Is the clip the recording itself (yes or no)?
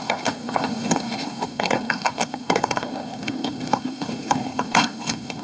no